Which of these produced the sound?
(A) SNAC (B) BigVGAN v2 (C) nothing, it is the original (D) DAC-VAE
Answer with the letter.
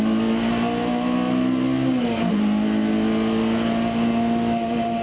C